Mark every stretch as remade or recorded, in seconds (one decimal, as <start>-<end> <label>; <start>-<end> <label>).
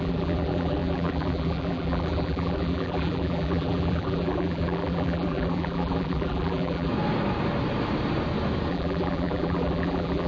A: 0.0-6.9 remade; 6.9-8.7 recorded; 8.7-10.3 remade